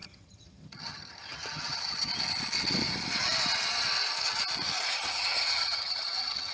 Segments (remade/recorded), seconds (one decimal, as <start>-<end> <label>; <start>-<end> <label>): 0.0-2.1 remade; 2.1-4.9 recorded; 4.9-6.5 remade